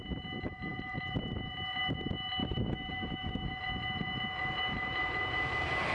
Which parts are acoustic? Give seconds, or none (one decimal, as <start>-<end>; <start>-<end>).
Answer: 0.0-2.4; 3.5-5.9

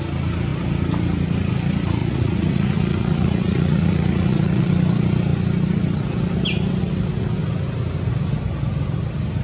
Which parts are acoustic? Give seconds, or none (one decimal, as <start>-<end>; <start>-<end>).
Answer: 0.0-2.0; 4.7-9.4

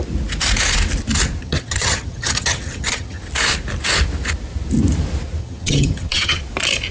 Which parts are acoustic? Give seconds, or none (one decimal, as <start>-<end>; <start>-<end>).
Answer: 0.0-1.4; 3.2-5.4; 6.4-6.9

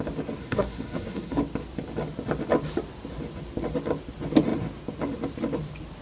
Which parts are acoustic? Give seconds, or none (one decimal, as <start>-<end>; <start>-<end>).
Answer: 0.0-0.4; 1.4-6.0

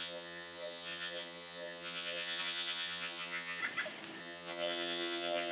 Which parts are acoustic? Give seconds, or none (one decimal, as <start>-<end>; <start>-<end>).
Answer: 3.6-4.2

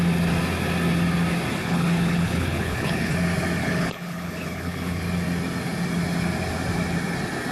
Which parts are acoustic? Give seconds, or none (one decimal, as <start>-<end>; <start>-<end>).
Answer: 0.0-1.6; 3.1-3.6; 5.0-7.5

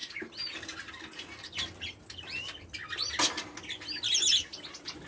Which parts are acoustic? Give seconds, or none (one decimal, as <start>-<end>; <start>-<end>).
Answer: 0.0-5.1